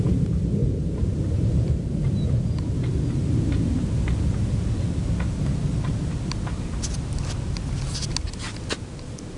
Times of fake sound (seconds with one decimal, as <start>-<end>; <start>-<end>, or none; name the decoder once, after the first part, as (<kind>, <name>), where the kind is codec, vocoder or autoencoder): 0.6-2.1 (vocoder, BigVGAN v2)